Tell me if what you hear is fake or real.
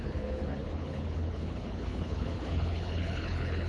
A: fake